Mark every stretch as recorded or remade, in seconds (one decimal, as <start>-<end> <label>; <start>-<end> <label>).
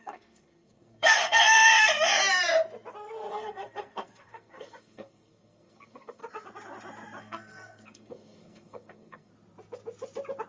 0.0-1.9 remade; 1.9-3.3 recorded; 3.3-6.2 remade; 6.2-7.2 recorded; 7.2-9.3 remade; 9.3-10.5 recorded